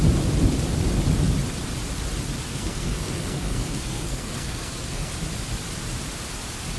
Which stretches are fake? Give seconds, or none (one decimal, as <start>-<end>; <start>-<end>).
2.5-5.1